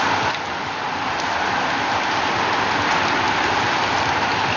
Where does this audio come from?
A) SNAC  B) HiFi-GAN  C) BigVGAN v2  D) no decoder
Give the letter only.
D